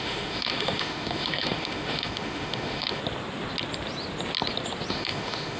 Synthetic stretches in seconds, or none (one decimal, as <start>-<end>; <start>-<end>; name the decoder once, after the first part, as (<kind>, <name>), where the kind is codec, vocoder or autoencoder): 0.0-3.0 (autoencoder, DAC-VAE); 4.9-5.6